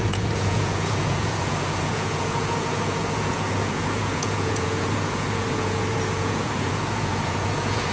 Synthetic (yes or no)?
yes